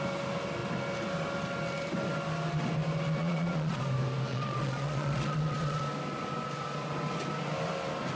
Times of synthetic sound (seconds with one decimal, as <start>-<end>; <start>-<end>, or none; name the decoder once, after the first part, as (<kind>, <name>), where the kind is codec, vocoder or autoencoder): 3.2-3.8 (vocoder, Vocos); 4.3-5.8